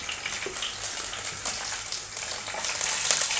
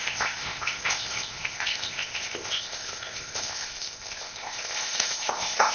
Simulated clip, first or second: second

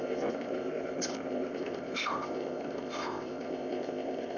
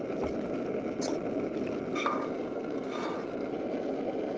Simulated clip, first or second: first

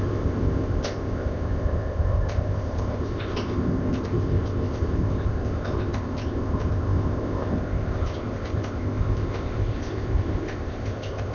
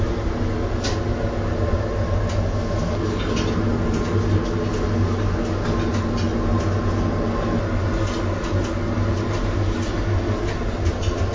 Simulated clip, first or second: first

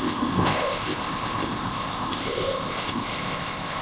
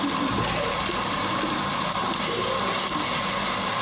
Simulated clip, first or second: first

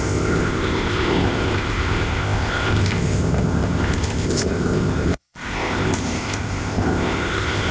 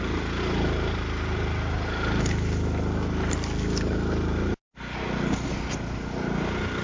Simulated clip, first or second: first